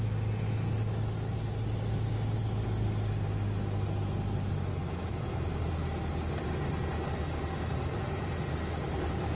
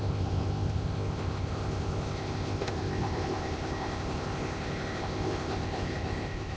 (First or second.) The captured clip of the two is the first